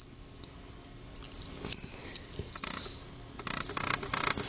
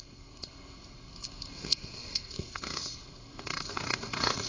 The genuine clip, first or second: first